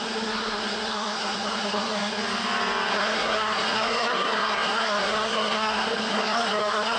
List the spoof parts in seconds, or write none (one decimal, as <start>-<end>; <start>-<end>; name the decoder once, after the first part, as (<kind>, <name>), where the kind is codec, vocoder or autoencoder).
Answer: 0.0-2.2 (codec, SNAC); 2.9-7.0